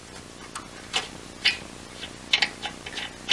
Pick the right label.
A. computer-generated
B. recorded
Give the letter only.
B